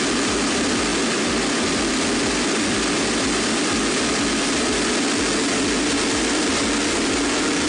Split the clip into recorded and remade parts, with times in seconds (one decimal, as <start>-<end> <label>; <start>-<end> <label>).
0.0-7.7 recorded

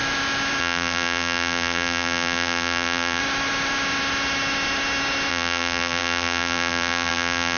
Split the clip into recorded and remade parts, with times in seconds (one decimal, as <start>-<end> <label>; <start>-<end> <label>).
0.0-0.6 recorded; 0.6-3.2 remade; 3.2-5.3 recorded; 5.3-7.6 remade